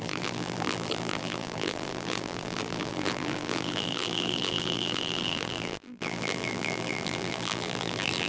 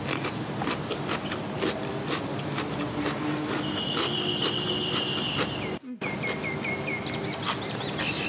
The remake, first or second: first